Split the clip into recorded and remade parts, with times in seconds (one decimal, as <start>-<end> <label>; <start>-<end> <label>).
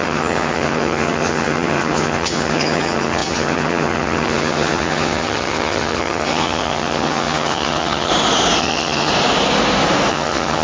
0.0-8.1 remade; 8.1-8.6 recorded; 8.6-9.1 remade; 9.1-10.1 recorded; 10.1-10.6 remade